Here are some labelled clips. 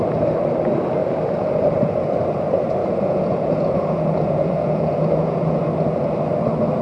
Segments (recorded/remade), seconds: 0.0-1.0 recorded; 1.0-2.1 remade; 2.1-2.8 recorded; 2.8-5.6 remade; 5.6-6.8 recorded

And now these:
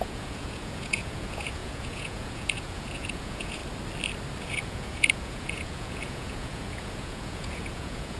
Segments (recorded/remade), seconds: 0.0-3.6 remade; 3.6-4.4 recorded; 4.4-8.2 remade

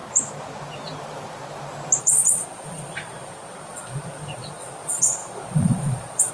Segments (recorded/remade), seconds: 0.0-2.0 recorded; 2.0-6.3 remade

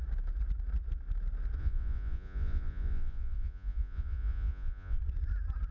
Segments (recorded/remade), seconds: 0.0-1.6 recorded; 1.6-5.0 remade; 5.0-5.7 recorded

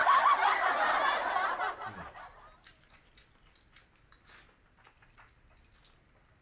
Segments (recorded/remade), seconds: 0.0-6.4 recorded

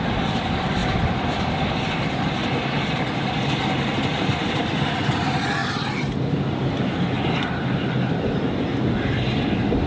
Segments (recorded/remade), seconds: 0.0-9.9 recorded

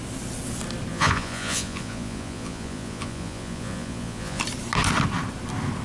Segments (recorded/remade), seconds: 0.0-0.9 recorded; 0.9-4.4 remade; 4.4-5.8 recorded